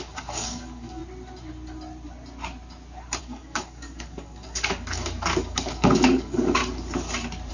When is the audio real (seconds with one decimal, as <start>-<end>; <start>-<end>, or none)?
1.0-3.2; 6.6-7.5